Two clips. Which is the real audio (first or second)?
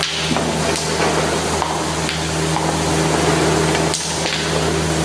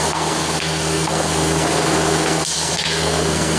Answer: first